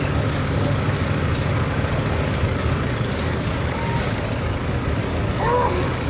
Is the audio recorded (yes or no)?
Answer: no